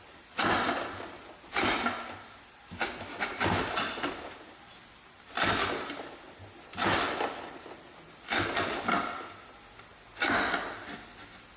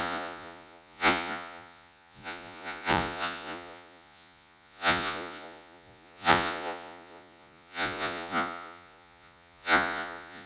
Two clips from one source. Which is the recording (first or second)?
first